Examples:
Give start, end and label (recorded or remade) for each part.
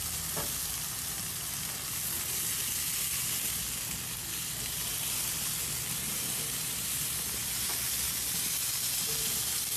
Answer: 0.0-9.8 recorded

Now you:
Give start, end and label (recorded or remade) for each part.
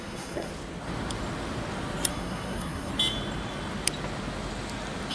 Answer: 0.0-0.5 remade; 0.5-2.1 recorded; 2.1-2.9 remade; 2.9-5.1 recorded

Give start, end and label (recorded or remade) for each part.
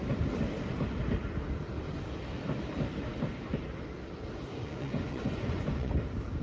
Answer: 0.0-4.5 recorded; 4.5-5.9 remade; 5.9-6.4 recorded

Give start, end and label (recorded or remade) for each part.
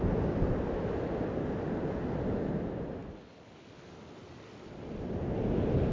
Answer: 0.0-5.9 recorded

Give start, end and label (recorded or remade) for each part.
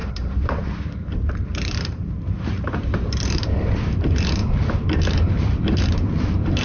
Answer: 0.0-4.4 remade; 4.4-5.1 recorded; 5.1-6.6 remade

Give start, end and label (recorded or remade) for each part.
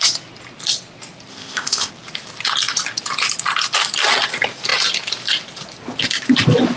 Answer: 0.0-1.3 recorded; 1.3-1.9 remade; 1.9-6.8 recorded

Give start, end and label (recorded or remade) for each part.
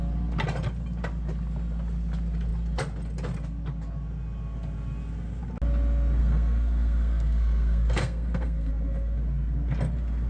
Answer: 0.0-6.2 recorded; 6.2-8.7 remade; 8.7-10.3 recorded